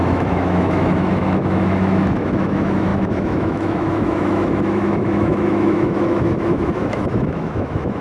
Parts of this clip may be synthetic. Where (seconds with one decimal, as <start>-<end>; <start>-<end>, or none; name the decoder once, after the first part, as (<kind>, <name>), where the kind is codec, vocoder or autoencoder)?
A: 0.0-8.0 (autoencoder, DAC-VAE)

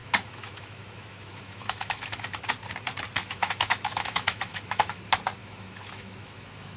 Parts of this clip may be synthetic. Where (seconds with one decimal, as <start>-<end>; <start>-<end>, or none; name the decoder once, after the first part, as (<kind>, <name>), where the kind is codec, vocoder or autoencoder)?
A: 0.0-2.4 (autoencoder, DAC-VAE); 3.2-5.0; 5.4-6.8

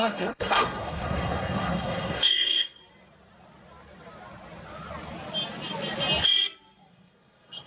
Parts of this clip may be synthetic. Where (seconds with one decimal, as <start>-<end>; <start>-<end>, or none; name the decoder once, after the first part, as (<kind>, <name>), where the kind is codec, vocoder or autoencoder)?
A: 0.0-2.8 (codec, SNAC); 6.9-7.7

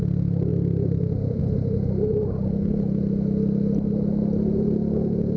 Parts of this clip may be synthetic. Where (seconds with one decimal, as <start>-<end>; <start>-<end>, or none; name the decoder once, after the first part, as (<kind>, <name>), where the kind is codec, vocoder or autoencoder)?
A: 0.5-1.4 (vocoder, BigVGAN v2)

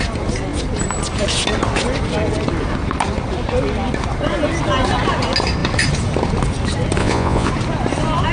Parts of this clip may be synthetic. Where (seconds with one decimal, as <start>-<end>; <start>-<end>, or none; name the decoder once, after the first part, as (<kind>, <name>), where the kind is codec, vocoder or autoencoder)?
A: 7.0-7.5 (vocoder, Vocos)